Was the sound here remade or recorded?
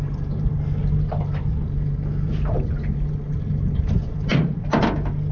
recorded